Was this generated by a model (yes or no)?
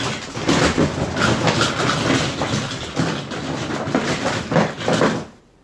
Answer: no